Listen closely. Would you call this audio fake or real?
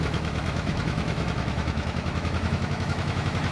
fake